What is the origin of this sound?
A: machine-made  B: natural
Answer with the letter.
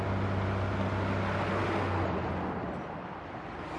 B